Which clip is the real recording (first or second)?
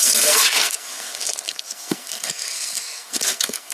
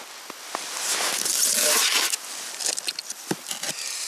second